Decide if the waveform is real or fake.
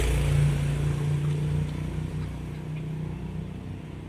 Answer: real